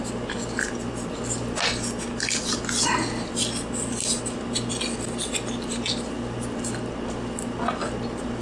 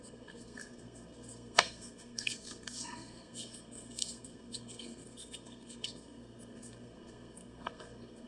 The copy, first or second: second